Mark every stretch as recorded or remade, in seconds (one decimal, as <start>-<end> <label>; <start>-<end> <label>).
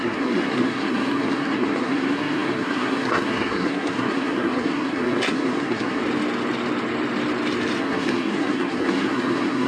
0.0-6.0 remade; 6.0-7.8 recorded; 7.8-9.7 remade